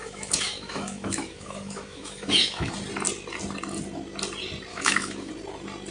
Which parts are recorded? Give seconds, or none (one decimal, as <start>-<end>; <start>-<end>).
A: 2.7-4.7; 5.3-5.9